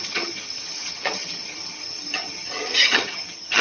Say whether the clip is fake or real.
fake